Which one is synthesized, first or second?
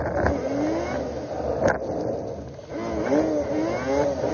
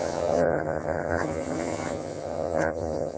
second